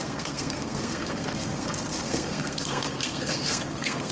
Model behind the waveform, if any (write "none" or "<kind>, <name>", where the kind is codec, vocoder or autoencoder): codec, SNAC